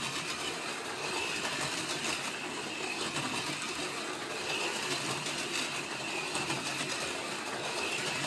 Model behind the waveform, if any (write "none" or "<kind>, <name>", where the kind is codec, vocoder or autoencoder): none